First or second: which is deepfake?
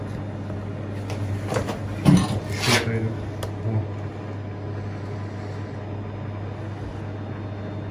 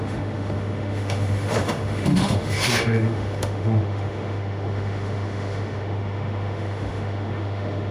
second